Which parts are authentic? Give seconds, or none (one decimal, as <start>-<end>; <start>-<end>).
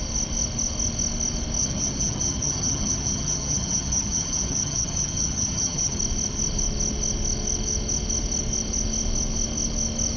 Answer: 0.0-1.6; 6.0-10.2